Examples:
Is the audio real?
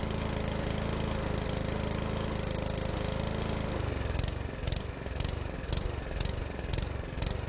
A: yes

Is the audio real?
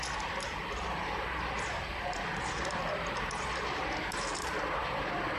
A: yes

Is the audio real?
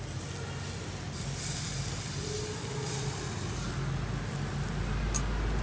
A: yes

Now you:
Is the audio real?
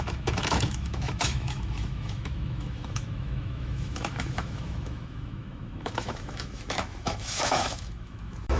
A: no